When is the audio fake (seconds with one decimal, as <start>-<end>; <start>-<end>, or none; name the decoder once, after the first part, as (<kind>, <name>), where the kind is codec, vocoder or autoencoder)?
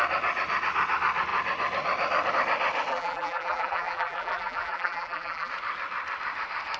2.9-5.5 (vocoder, BigVGAN v2)